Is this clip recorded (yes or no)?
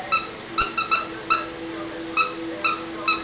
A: yes